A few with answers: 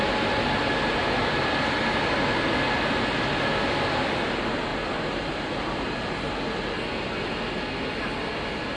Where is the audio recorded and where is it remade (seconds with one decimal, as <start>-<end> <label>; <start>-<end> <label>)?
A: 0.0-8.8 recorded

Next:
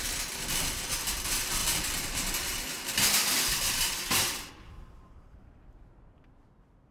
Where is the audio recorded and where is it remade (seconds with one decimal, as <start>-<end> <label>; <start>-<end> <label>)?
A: 0.0-6.9 recorded

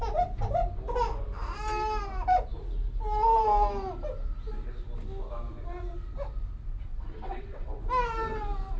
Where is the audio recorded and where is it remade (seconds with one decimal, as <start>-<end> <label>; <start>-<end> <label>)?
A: 0.0-6.9 recorded; 6.9-7.8 remade; 7.8-8.8 recorded

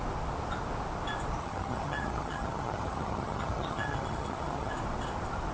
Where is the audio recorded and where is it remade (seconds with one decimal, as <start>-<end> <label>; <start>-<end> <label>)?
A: 0.0-1.4 recorded; 1.4-4.7 remade; 4.7-5.5 recorded

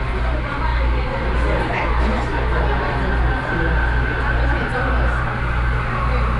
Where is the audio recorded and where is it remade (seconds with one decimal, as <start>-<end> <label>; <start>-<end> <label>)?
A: 0.0-6.4 recorded

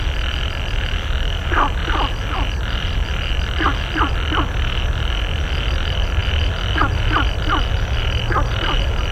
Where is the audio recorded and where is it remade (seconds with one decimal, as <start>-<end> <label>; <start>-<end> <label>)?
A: 0.0-9.1 recorded